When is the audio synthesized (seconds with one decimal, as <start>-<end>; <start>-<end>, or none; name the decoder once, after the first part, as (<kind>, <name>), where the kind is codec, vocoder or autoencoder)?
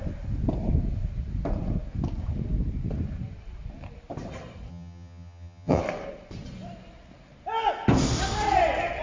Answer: 4.7-5.8 (vocoder, HiFi-GAN)